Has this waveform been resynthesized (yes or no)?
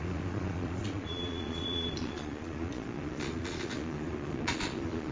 yes